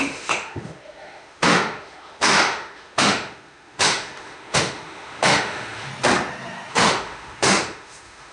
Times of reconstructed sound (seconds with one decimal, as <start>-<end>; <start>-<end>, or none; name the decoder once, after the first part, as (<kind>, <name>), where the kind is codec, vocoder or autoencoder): 0.0-5.9 (autoencoder, DAC-VAE); 6.7-8.3